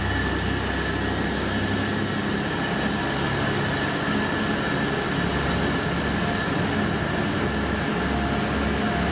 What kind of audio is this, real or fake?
real